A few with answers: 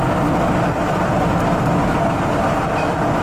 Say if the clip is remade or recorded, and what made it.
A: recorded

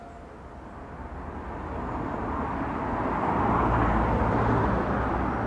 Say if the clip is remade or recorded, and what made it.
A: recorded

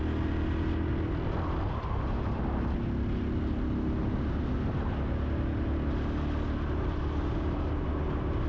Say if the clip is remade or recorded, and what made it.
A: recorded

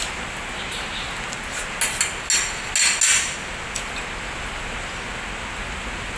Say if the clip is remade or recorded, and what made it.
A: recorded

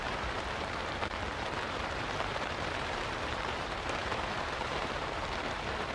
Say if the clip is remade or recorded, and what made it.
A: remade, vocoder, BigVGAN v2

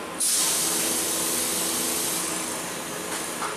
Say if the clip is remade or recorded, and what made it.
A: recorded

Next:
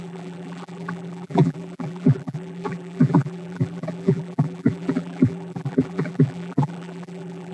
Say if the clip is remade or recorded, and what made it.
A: remade, vocoder, BigVGAN v2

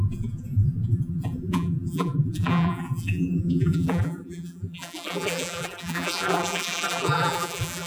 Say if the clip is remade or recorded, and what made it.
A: remade, vocoder, BigVGAN v2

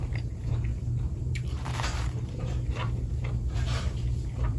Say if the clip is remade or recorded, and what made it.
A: remade, vocoder, BigVGAN v2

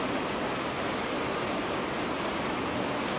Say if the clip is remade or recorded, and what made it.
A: recorded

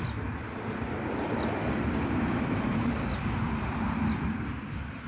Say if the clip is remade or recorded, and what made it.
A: remade, vocoder, BigVGAN v2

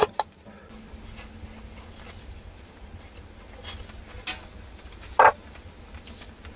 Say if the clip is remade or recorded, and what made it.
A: recorded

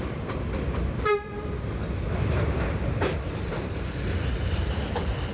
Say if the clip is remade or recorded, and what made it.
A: remade, vocoder, BigVGAN v2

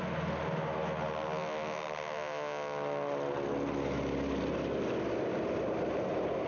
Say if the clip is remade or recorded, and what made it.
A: recorded